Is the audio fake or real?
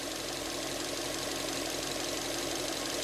real